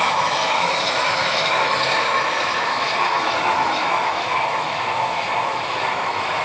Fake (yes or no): yes